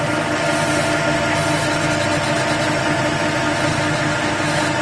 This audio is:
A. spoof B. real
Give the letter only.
B